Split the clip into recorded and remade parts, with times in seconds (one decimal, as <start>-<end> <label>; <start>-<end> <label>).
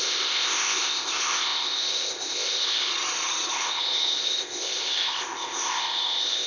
0.0-2.9 remade; 2.9-3.5 recorded; 3.5-6.5 remade